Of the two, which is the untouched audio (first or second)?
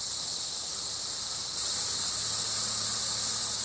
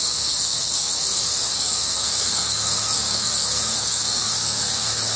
first